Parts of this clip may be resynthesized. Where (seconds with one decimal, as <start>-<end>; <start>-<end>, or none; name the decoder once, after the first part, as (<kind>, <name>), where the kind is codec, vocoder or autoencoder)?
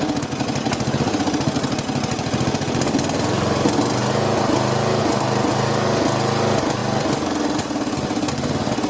none